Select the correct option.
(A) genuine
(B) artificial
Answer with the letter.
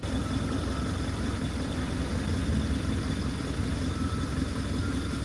A